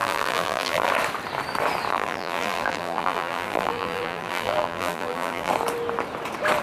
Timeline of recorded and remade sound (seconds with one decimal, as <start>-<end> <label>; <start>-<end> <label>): 0.0-0.9 remade; 0.9-1.9 recorded; 1.9-5.5 remade; 5.5-6.6 recorded